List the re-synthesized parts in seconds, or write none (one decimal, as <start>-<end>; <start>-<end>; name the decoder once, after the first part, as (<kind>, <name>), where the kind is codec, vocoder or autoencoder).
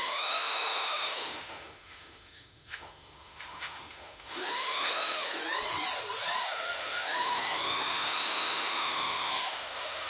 0.0-5.4 (autoencoder, DAC-VAE); 6.4-10.1